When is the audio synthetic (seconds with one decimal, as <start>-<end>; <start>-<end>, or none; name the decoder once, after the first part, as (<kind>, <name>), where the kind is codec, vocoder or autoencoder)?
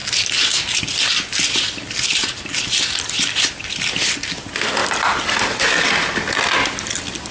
none